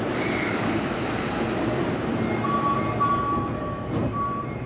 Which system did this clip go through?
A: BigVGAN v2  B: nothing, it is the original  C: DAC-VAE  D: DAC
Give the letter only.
A